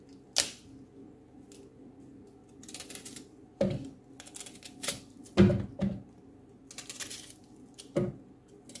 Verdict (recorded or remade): recorded